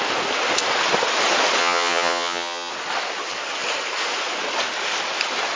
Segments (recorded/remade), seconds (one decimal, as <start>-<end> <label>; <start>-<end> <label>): 0.0-1.6 recorded; 1.6-2.7 remade; 2.7-5.6 recorded